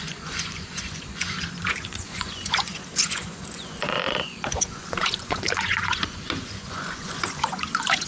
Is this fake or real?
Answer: fake